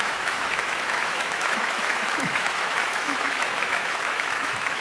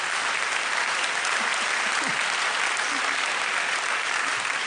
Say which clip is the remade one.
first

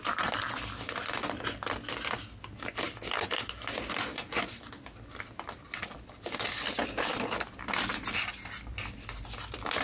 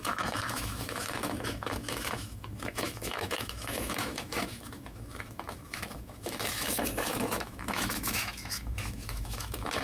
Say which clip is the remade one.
second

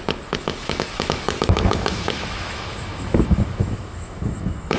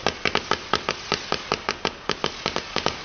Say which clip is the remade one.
first